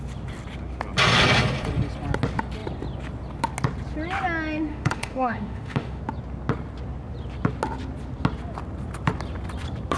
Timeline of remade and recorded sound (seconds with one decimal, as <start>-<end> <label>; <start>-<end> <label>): 0.0-4.7 recorded; 4.7-6.0 remade; 6.0-10.0 recorded